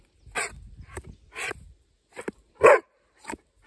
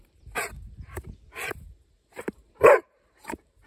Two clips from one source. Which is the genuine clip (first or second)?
first